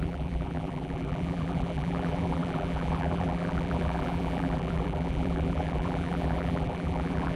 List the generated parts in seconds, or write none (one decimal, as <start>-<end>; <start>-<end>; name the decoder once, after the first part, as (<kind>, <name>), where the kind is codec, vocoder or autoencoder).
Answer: 0.0-7.4 (vocoder, BigVGAN v2)